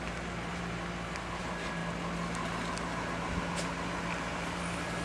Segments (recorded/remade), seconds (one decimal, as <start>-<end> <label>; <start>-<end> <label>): 0.0-5.0 recorded